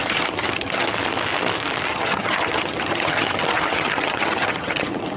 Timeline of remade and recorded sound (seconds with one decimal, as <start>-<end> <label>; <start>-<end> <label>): 0.0-0.9 remade; 0.9-1.9 recorded; 1.9-5.2 remade